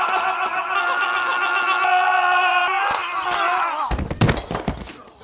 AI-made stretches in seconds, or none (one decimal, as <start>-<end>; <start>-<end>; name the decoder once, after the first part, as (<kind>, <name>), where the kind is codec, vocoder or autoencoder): none

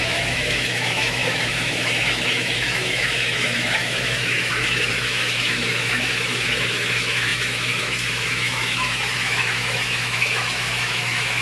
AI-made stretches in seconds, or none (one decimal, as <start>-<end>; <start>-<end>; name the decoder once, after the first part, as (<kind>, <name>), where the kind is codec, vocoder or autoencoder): 0.0-11.4 (autoencoder, DAC-VAE)

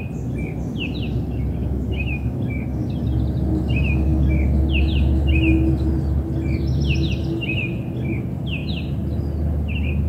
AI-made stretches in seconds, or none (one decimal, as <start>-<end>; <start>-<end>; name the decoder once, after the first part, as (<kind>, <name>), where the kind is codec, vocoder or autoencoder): 1.6-2.4 (autoencoder, DAC-VAE)

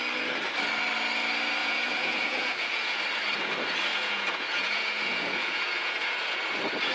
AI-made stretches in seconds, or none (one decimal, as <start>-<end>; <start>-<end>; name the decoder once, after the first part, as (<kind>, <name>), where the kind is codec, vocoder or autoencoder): 1.6-3.0 (vocoder, Vocos); 3.9-6.5

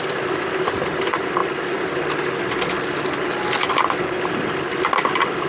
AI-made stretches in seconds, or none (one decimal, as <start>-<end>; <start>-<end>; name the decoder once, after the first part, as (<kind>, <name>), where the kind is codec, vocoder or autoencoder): none

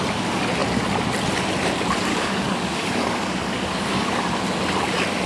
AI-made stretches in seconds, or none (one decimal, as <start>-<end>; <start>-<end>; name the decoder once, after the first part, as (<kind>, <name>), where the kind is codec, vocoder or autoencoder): 2.1-4.1 (codec, DAC)